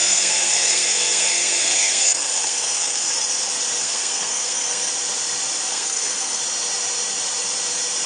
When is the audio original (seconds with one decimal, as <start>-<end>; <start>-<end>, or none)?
3.1-3.8; 4.9-5.7; 6.4-8.1